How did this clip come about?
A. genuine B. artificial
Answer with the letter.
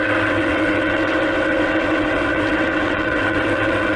B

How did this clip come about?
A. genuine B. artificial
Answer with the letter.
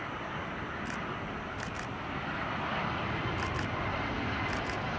A